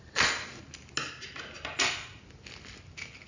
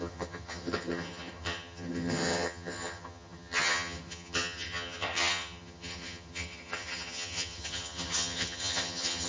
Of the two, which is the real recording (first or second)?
first